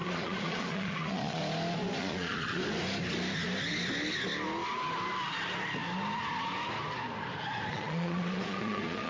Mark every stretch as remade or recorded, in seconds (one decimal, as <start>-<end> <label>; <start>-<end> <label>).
0.0-1.4 remade; 1.4-2.0 recorded; 2.0-2.6 remade; 2.6-7.7 recorded; 7.7-9.1 remade